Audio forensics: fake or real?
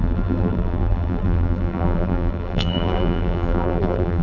fake